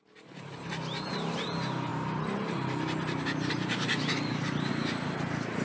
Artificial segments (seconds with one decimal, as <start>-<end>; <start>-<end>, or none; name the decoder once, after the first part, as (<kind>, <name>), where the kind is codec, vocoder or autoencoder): none